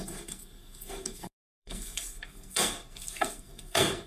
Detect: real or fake fake